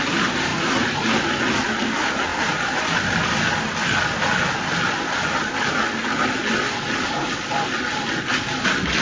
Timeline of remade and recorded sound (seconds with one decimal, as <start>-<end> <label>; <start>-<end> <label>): 0.0-9.0 recorded